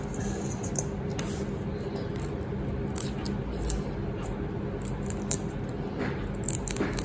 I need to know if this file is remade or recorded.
recorded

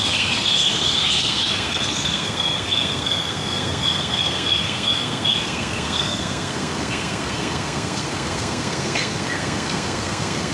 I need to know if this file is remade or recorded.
remade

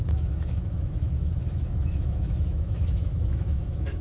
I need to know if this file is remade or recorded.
remade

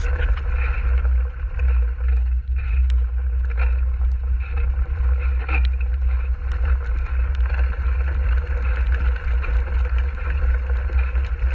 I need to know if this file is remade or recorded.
recorded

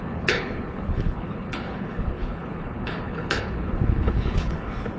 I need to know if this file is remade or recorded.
remade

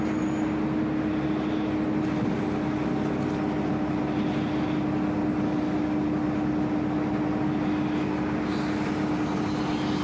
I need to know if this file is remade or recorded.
recorded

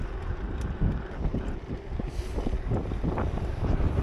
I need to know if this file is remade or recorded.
remade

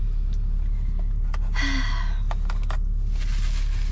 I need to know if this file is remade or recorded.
recorded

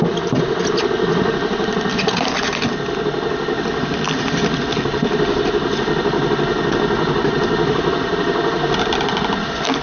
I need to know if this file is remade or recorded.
recorded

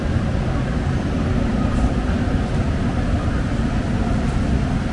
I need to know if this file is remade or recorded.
recorded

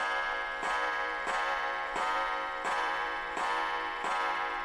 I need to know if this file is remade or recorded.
remade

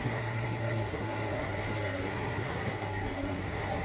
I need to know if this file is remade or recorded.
remade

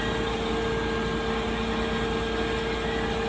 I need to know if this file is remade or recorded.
recorded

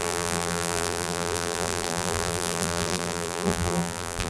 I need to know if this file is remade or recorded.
remade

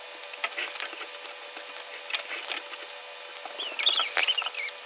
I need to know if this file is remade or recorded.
recorded